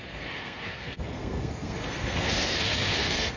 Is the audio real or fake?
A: fake